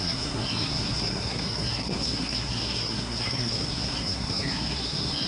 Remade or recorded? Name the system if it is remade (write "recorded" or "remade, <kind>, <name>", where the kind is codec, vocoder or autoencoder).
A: remade, codec, SNAC